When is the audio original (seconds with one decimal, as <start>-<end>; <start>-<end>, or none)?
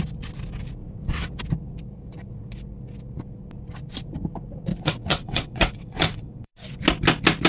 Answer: 0.0-0.8; 1.4-4.7; 6.5-7.5